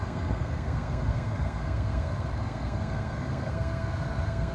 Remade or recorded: remade